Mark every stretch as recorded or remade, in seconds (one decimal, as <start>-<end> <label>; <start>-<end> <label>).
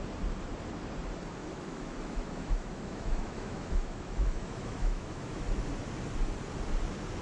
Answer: 0.0-1.4 recorded; 1.4-5.4 remade; 5.4-7.2 recorded